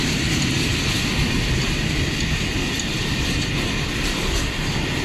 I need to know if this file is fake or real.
real